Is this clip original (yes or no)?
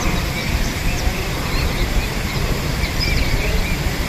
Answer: yes